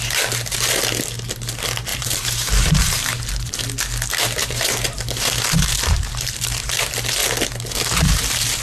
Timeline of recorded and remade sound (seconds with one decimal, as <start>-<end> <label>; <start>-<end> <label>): 0.0-1.9 recorded; 1.9-3.5 remade; 3.5-4.4 recorded; 4.4-6.8 remade; 6.8-8.6 recorded